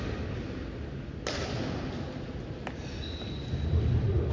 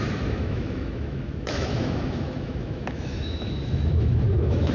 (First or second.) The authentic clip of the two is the first